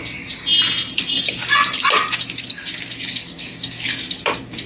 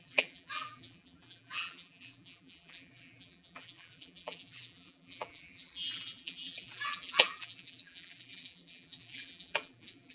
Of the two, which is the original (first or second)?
first